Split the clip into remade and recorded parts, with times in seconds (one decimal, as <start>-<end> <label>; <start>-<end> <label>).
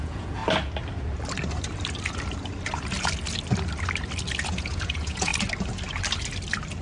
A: 0.0-0.4 remade; 0.4-4.5 recorded; 4.5-5.3 remade; 5.3-6.8 recorded